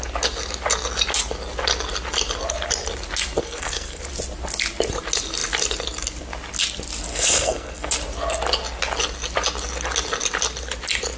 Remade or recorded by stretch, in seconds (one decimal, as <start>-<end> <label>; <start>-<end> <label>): 0.0-3.4 recorded; 3.4-4.0 remade; 4.0-7.1 recorded; 7.1-7.9 remade; 7.9-11.2 recorded